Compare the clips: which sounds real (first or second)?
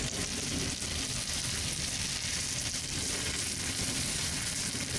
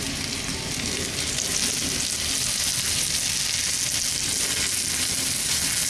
second